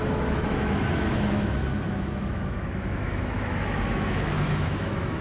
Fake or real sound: fake